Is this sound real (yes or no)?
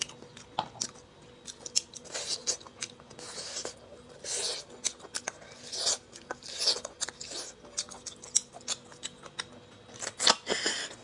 yes